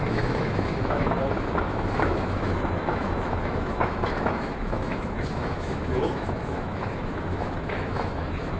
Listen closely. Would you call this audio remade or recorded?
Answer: remade